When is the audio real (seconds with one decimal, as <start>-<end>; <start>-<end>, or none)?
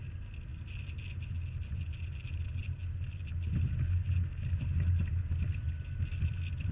0.0-6.7